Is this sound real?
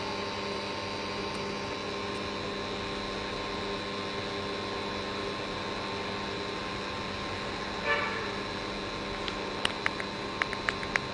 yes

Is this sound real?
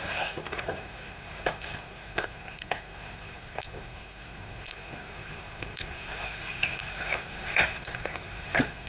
no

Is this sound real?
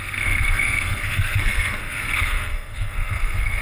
no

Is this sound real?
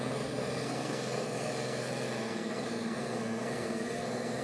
no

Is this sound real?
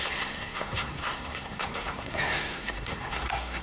no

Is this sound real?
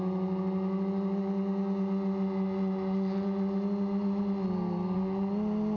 yes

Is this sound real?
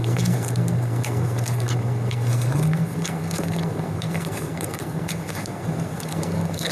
no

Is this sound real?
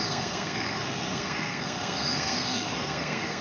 no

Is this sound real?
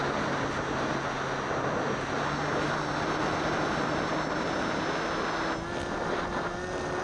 yes